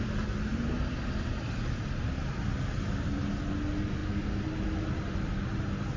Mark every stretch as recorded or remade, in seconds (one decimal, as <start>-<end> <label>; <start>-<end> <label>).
0.0-6.0 recorded